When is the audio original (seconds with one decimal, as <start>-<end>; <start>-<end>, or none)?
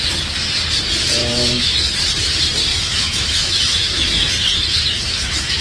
0.0-1.2; 1.9-2.7